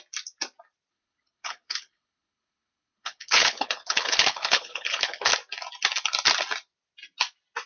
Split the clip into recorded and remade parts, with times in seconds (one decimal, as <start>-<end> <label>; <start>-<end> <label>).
0.0-0.9 recorded; 0.9-5.3 remade; 5.3-7.7 recorded